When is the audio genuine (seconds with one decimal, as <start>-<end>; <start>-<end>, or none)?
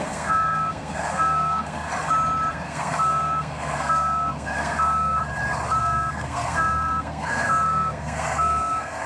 1.9-2.5; 5.2-5.8